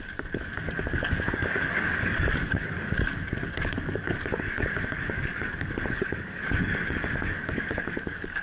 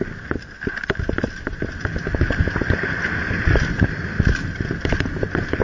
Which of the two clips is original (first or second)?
second